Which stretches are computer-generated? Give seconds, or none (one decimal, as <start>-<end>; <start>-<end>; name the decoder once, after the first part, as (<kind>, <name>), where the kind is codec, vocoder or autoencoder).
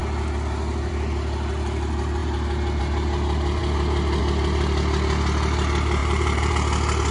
6.0-6.5 (vocoder, BigVGAN v2)